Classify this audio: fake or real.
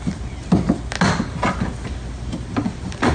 real